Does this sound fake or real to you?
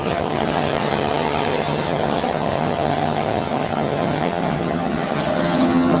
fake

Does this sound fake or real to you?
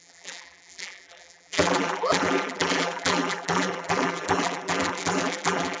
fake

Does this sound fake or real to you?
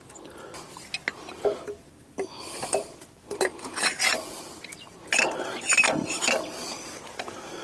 real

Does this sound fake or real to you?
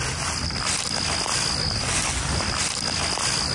real